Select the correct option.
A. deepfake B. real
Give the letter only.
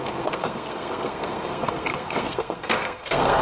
A